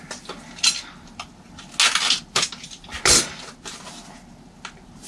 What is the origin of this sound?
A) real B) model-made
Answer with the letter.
A